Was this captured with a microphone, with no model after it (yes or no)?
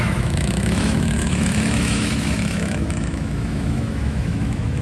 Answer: no